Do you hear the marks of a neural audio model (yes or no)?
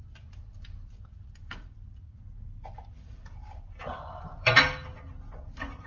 yes